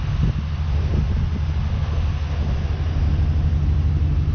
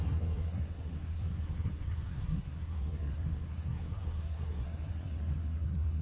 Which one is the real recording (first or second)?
first